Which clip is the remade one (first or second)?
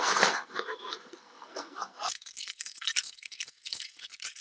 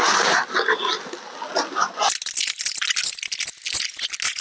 first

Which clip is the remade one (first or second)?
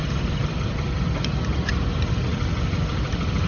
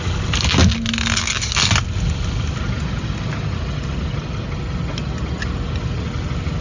first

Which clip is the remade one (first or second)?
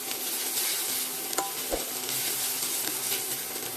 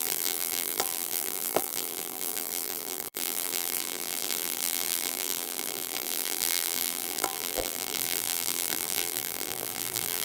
second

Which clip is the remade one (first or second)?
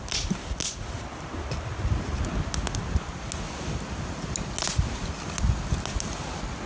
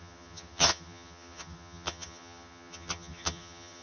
second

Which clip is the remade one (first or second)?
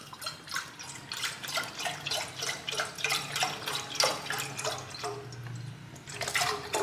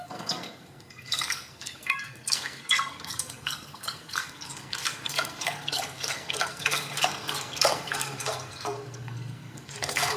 second